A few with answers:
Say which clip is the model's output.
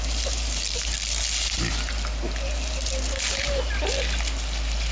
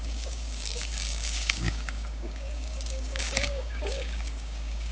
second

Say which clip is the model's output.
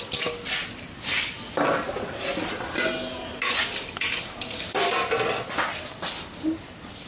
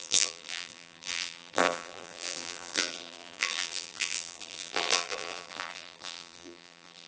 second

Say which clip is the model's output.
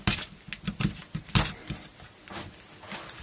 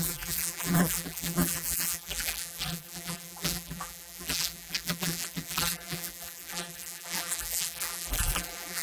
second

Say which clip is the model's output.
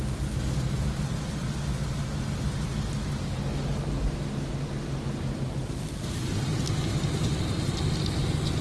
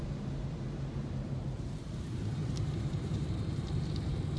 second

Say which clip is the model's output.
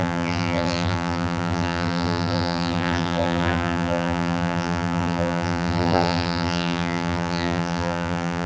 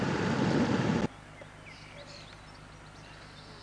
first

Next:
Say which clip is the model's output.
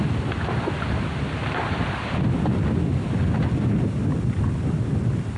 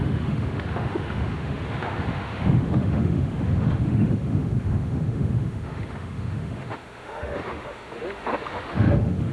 second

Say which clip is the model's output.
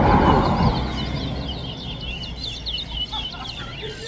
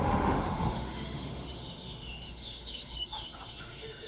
second